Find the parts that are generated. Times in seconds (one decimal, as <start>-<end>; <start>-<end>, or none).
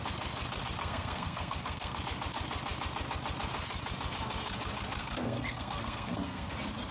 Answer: 0.8-2.0; 5.0-6.5